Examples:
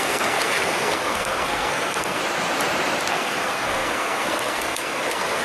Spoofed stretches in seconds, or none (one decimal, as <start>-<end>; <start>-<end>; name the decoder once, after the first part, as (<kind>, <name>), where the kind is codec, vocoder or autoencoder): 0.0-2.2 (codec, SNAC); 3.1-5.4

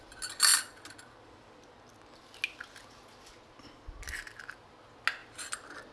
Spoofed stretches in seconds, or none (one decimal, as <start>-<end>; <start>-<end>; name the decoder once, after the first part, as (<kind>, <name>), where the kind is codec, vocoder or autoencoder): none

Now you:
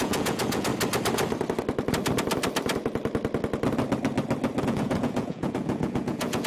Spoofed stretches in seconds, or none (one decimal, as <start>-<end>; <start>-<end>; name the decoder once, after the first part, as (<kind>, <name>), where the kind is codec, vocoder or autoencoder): 0.0-0.7 (vocoder, Vocos); 4.6-6.5

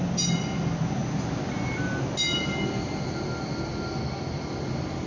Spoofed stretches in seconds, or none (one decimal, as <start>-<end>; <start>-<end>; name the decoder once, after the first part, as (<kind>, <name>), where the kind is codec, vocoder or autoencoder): none